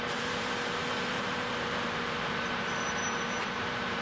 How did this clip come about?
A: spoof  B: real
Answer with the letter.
A